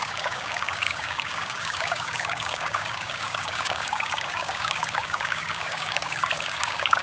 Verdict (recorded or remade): remade